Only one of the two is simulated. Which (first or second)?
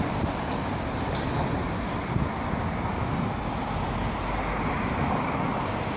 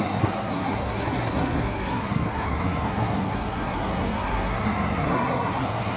second